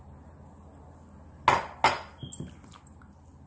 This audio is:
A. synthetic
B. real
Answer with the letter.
B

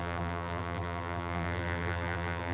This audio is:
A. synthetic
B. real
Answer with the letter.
A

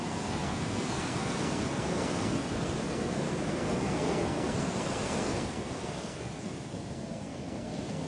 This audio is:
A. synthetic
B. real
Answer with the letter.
A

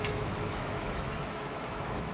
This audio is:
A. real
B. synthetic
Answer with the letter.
B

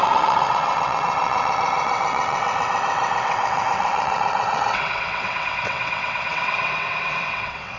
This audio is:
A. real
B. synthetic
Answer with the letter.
B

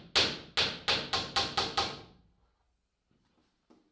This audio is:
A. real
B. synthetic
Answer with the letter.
A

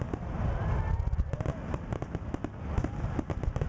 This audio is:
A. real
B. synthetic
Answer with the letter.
A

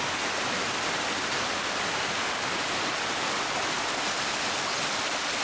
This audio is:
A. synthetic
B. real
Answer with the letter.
B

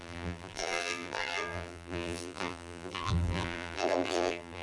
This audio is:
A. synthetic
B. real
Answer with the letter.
A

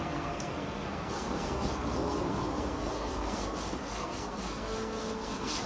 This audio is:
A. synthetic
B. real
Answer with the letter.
A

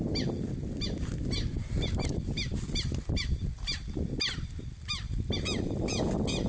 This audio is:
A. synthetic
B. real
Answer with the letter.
B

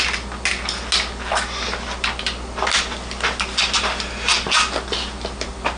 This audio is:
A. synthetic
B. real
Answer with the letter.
B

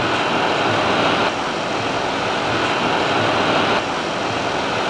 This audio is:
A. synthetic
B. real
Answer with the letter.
B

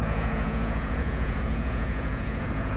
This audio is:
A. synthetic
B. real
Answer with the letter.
A